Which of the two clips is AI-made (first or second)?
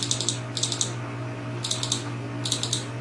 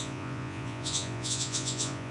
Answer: second